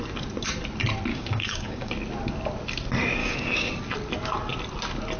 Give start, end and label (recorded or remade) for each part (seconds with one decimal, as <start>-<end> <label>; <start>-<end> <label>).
0.0-1.1 recorded; 1.1-1.9 remade; 1.9-3.2 recorded; 3.2-3.7 remade; 3.7-5.2 recorded